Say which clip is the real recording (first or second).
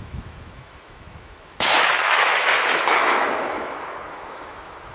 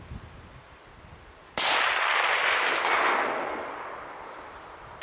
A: second